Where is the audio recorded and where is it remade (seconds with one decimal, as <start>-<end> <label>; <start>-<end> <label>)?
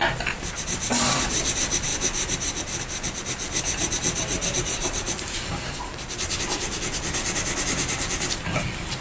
0.0-4.7 recorded; 4.7-6.4 remade; 6.4-9.0 recorded